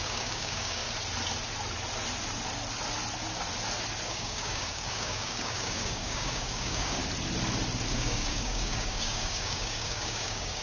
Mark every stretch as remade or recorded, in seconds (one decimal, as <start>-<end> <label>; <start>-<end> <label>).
0.0-0.8 remade; 0.8-4.1 recorded; 4.1-7.0 remade; 7.0-7.9 recorded; 7.9-10.6 remade